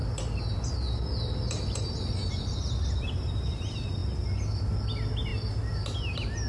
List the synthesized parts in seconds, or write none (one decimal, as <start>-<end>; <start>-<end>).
none

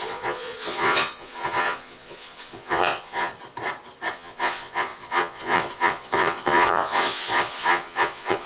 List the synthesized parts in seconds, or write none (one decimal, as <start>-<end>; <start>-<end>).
0.0-3.3; 4.1-8.5

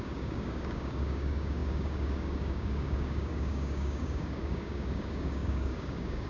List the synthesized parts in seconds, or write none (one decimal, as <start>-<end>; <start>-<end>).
0.0-6.3

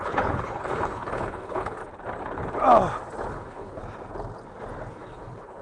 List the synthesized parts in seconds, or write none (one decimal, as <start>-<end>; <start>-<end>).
0.0-1.8; 3.3-3.8; 4.9-5.6